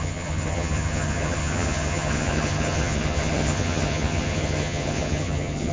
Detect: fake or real fake